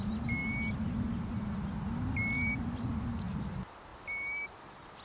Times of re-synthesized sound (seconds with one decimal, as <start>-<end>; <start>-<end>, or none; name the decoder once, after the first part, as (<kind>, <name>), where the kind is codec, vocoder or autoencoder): none